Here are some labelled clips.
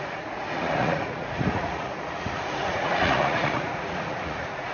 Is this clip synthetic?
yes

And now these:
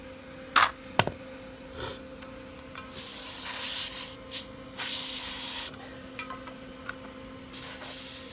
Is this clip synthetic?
no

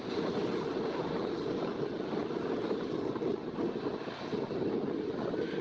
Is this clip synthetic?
no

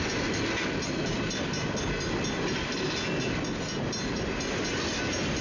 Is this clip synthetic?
no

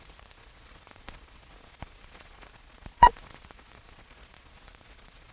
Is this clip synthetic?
yes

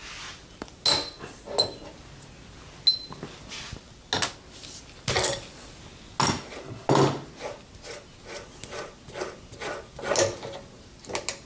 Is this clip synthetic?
no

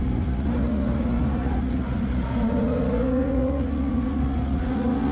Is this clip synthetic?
yes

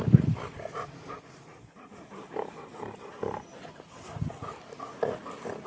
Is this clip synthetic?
no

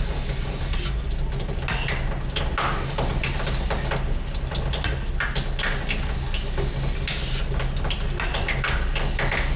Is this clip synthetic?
no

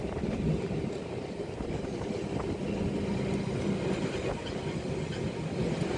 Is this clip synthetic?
no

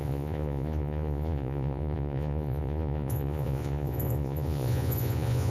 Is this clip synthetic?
yes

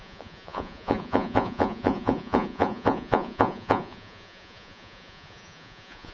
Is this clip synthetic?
yes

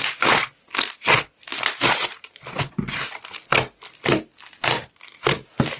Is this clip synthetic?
no